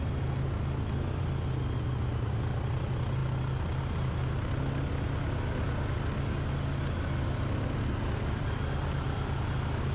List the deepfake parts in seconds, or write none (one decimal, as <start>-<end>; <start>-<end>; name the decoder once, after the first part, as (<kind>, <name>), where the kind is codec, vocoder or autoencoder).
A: none